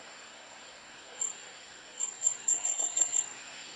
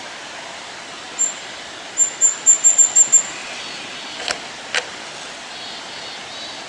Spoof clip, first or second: first